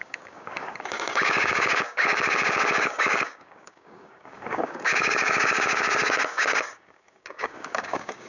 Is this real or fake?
fake